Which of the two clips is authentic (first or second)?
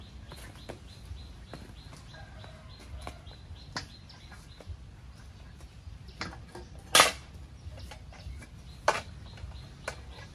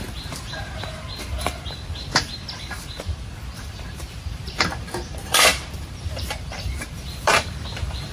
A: first